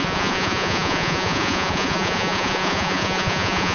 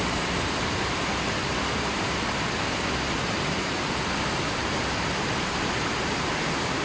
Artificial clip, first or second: first